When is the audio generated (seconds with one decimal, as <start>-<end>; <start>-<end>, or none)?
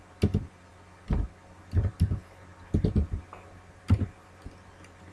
none